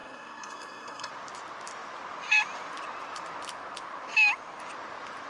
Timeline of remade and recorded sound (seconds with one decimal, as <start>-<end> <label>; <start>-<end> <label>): 0.0-1.1 remade; 1.1-5.3 recorded